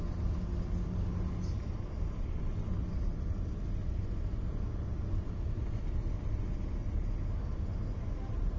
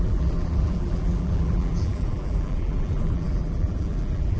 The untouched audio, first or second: first